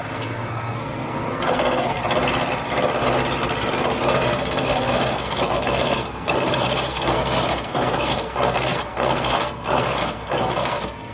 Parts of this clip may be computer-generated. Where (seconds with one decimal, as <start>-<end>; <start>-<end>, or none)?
0.0-2.0; 3.7-11.1